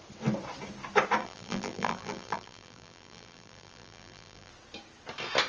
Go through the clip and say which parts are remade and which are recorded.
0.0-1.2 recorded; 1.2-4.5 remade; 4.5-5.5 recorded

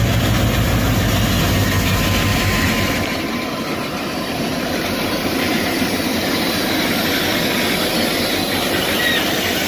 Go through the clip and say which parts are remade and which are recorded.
0.0-2.3 recorded; 2.3-6.7 remade; 6.7-9.7 recorded

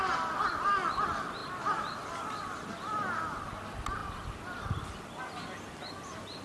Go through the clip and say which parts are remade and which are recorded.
0.0-4.0 recorded; 4.0-4.6 remade; 4.6-6.4 recorded

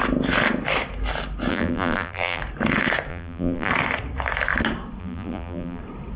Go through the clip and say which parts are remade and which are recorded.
0.0-1.5 recorded; 1.5-2.4 remade; 2.4-3.1 recorded; 3.1-3.7 remade; 3.7-5.0 recorded; 5.0-5.8 remade; 5.8-6.2 recorded

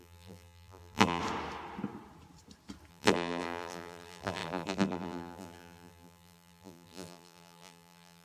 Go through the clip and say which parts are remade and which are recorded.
0.0-1.2 remade; 1.2-2.9 recorded; 2.9-8.2 remade

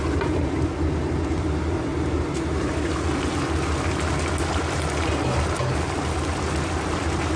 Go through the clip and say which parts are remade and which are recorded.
0.0-1.9 recorded; 1.9-2.9 remade; 2.9-7.4 recorded

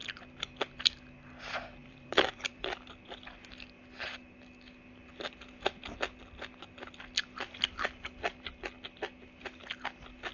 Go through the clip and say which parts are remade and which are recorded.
0.0-1.8 recorded; 1.8-2.6 remade; 2.6-10.3 recorded